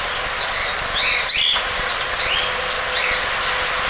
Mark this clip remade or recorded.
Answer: recorded